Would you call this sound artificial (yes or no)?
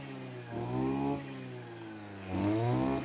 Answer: no